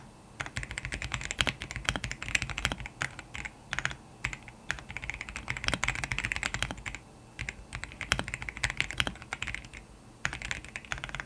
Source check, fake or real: real